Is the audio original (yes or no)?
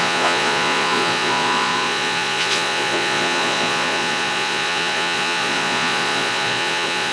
no